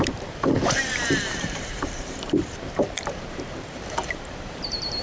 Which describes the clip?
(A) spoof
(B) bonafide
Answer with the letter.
A